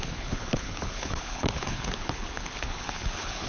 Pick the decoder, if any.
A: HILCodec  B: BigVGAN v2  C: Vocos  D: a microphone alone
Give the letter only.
A